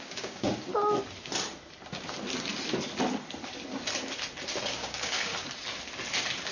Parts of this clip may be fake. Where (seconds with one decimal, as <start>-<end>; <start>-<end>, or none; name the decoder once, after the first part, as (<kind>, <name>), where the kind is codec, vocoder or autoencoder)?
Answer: 0.0-0.7 (codec, DAC); 4.6-5.3

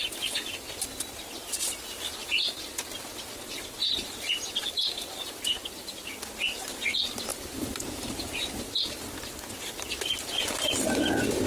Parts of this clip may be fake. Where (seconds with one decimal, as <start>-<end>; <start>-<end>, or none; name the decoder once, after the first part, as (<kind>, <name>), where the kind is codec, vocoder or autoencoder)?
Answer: 2.2-2.9 (vocoder, BigVGAN v2); 3.8-6.1; 7.3-8.7

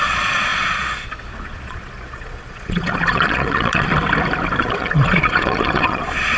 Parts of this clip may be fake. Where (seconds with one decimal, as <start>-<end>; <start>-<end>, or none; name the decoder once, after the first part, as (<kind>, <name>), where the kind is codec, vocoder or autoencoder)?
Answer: 0.0-3.9 (vocoder, Vocos); 4.6-6.4

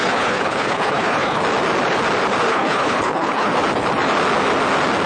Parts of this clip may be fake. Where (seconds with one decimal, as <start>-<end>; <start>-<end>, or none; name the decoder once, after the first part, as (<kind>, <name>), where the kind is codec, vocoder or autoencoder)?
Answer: 0.0-1.4 (codec, HILCodec); 2.5-3.5

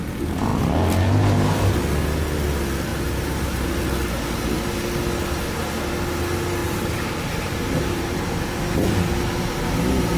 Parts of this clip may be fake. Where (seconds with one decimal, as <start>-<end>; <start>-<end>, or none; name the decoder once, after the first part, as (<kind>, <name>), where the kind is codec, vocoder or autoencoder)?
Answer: 2.9-3.7 (vocoder, BigVGAN v2); 6.6-8.4

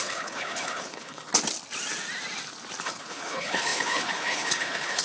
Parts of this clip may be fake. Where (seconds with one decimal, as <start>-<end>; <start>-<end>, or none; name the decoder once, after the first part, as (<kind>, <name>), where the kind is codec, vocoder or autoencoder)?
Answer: 0.0-1.3 (codec, HILCodec); 2.8-5.0